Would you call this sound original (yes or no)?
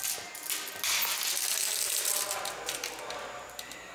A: yes